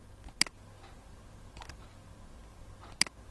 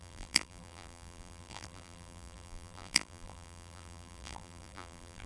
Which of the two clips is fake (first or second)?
second